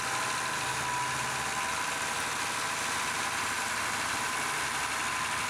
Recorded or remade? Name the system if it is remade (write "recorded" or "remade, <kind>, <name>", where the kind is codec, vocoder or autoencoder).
recorded